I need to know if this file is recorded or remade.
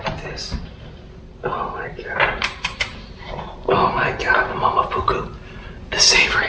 remade